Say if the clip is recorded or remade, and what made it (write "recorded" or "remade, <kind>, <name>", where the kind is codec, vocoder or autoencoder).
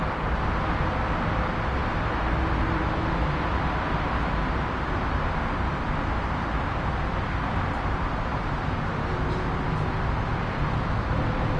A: recorded